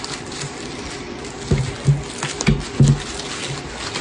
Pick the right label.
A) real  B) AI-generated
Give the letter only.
A